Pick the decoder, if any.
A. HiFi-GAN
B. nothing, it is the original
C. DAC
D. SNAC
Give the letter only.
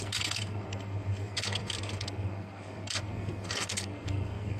D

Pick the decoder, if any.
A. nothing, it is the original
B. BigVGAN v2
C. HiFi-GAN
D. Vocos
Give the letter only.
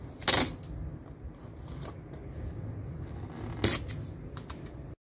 A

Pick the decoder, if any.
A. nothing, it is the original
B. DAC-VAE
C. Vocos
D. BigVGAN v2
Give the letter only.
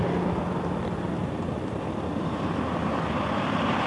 A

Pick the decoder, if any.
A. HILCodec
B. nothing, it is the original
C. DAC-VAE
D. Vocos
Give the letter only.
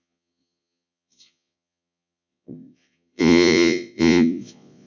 D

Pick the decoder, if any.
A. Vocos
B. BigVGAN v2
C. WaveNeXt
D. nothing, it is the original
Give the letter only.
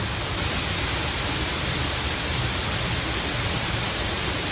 D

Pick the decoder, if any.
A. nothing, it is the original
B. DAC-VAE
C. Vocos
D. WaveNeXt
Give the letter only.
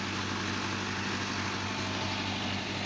A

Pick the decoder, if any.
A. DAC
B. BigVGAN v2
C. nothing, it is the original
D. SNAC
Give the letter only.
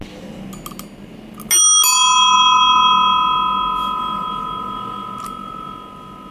C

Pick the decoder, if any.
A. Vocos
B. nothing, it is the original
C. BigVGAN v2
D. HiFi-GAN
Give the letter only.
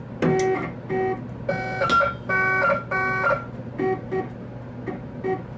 B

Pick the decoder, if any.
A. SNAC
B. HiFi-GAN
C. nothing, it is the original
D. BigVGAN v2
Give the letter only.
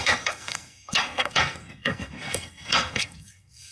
A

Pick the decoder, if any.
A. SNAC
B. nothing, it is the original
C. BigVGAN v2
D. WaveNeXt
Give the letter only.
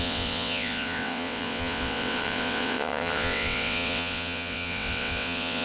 D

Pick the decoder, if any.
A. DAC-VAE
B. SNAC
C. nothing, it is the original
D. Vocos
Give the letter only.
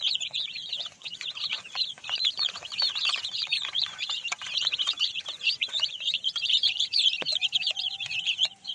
D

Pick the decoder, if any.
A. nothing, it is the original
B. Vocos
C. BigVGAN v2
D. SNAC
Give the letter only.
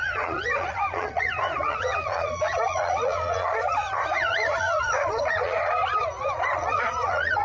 B